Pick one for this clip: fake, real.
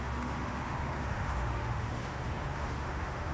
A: fake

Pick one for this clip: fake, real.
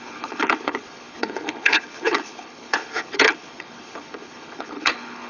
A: fake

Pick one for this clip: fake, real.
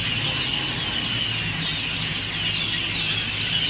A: real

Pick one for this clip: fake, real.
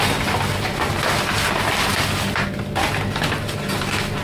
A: real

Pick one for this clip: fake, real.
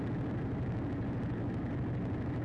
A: real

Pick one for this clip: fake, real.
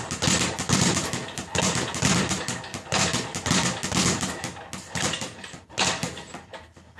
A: real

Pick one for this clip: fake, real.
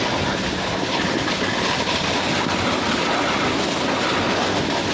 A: real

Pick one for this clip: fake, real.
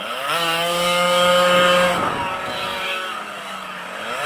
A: fake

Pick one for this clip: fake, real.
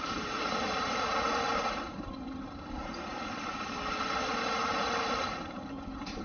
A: fake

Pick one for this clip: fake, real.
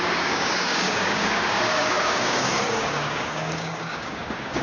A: fake